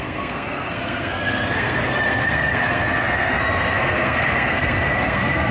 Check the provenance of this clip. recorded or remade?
remade